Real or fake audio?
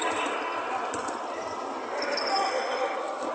real